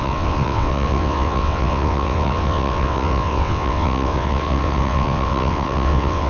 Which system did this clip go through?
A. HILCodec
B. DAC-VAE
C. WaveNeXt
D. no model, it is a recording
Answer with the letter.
C